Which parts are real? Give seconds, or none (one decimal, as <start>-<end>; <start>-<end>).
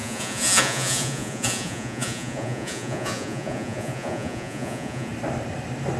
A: 5.1-6.0